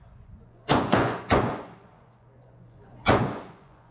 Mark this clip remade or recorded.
remade